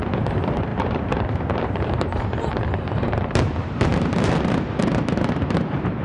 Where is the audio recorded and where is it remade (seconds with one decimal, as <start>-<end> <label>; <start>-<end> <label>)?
0.0-6.0 remade